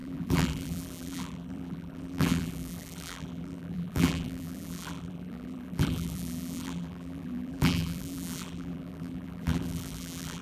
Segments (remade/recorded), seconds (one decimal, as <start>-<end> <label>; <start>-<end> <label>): 0.0-10.4 remade